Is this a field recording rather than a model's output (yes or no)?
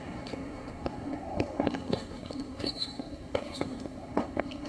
no